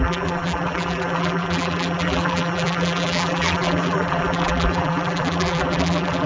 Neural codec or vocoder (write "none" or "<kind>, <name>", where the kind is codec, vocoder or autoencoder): vocoder, BigVGAN v2